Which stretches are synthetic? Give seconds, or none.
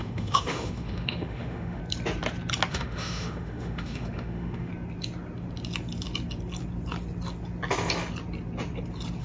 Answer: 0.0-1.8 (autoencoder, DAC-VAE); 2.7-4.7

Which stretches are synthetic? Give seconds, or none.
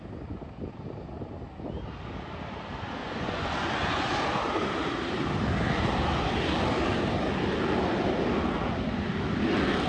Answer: 3.0-4.2 (vocoder, Vocos)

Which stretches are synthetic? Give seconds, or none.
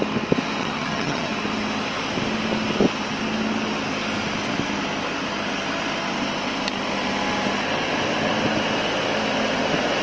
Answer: 0.6-1.3 (vocoder, HiFi-GAN)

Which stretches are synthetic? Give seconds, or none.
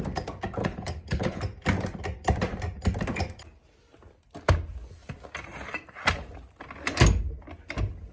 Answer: 0.6-1.4 (codec, HILCodec)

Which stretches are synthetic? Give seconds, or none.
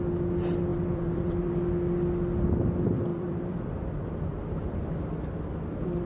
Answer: 0.7-1.5 (vocoder, BigVGAN v2); 3.1-4.9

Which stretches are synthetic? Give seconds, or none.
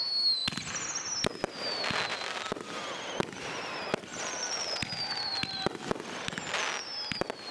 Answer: 2.1-3.1 (vocoder, BigVGAN v2)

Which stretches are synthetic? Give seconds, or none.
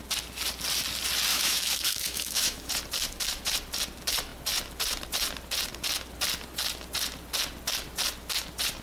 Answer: 1.3-2.7 (autoencoder, DAC-VAE)